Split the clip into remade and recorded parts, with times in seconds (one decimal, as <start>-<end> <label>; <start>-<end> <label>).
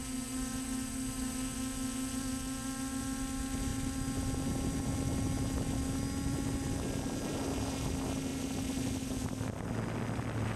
0.0-10.6 recorded